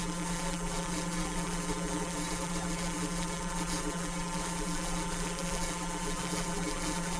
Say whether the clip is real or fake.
fake